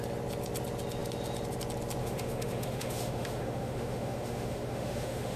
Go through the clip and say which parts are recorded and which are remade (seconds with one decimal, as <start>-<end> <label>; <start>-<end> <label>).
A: 0.0-2.0 recorded; 2.0-5.4 remade